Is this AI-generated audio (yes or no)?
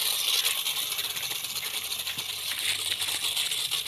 no